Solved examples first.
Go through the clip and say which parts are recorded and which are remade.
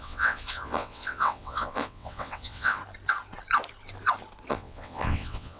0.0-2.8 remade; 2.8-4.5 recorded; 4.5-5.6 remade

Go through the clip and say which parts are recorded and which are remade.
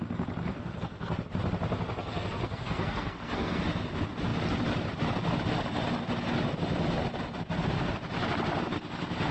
0.0-0.5 recorded; 0.5-1.2 remade; 1.2-2.0 recorded; 2.0-3.6 remade; 3.6-9.3 recorded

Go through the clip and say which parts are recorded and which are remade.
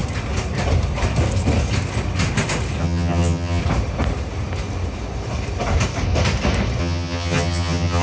0.0-2.8 recorded; 2.8-3.6 remade; 3.6-6.8 recorded; 6.8-8.0 remade